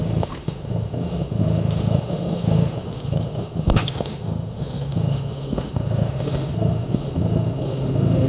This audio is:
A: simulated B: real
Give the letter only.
A